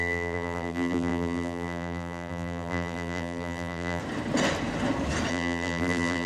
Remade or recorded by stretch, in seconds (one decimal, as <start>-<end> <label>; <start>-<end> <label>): 0.0-4.0 remade; 4.0-5.3 recorded; 5.3-6.3 remade